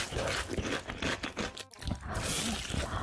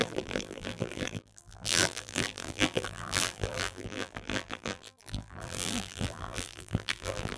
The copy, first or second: second